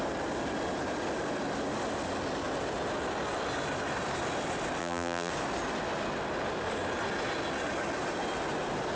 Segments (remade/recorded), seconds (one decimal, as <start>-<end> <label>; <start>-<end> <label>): 0.0-4.8 recorded; 4.8-5.3 remade; 5.3-8.9 recorded